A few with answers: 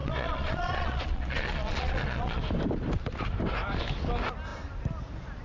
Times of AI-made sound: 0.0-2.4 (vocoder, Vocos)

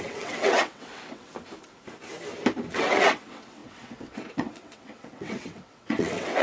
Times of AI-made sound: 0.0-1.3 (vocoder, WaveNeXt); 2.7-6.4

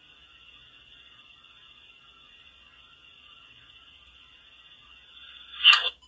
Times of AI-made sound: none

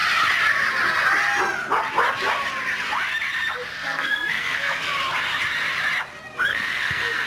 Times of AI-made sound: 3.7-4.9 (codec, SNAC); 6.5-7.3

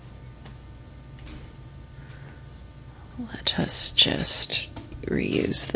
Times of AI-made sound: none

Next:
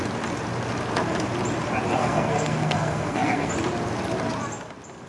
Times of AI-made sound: 2.0-3.5 (codec, SNAC)

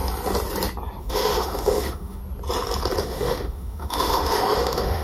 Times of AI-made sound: 1.0-2.2 (autoencoder, DAC-VAE); 3.0-5.0

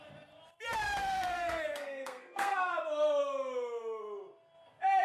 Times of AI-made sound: 1.0-2.7 (codec, SNAC)